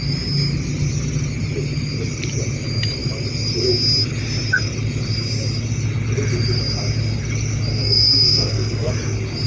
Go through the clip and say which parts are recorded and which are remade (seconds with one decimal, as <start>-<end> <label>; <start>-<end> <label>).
0.0-7.7 recorded; 7.7-8.9 remade; 8.9-9.5 recorded

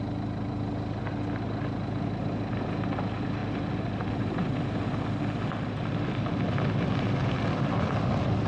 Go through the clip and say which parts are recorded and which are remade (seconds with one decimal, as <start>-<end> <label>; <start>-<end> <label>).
0.0-8.5 recorded

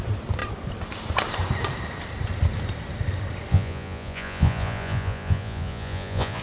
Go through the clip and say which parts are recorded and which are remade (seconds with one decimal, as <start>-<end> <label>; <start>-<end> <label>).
0.0-3.5 recorded; 3.5-6.4 remade

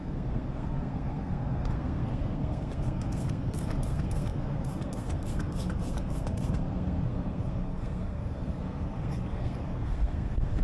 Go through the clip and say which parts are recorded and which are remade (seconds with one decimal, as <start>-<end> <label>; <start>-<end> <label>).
0.0-10.6 remade

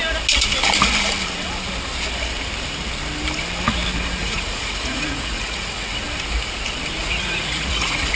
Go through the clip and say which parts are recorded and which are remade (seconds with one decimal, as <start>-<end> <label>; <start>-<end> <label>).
0.0-4.2 recorded; 4.2-5.9 remade; 5.9-7.0 recorded; 7.0-8.1 remade

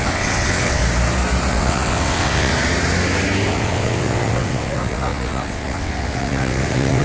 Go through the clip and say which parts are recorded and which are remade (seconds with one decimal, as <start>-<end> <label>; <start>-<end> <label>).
0.0-0.8 remade; 0.8-1.5 recorded; 1.5-2.5 remade; 2.5-3.5 recorded; 3.5-7.0 remade

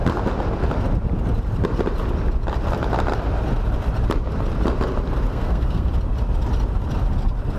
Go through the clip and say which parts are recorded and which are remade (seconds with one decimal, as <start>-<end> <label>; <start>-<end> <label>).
0.0-5.3 recorded; 5.3-5.9 remade; 5.9-7.6 recorded